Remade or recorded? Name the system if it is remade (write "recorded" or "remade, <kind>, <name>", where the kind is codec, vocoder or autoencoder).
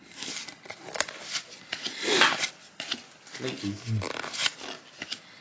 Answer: recorded